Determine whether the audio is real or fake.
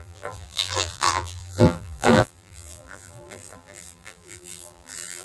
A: fake